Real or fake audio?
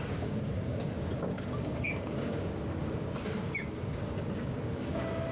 fake